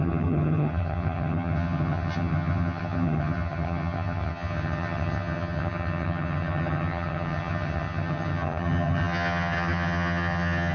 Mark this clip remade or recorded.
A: remade